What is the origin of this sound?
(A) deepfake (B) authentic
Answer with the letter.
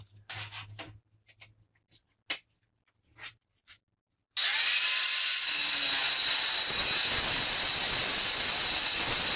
B